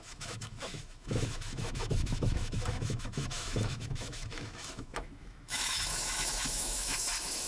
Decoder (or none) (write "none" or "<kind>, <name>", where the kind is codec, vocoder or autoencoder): autoencoder, DAC-VAE